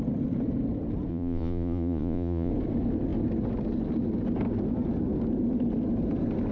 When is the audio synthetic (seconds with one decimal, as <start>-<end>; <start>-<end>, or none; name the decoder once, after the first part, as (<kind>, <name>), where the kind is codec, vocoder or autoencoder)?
1.1-2.5 (vocoder, Vocos)